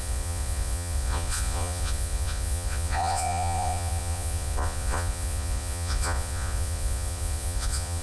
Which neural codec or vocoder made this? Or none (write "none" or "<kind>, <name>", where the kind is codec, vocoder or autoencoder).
vocoder, Vocos